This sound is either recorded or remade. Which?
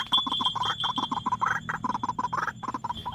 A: recorded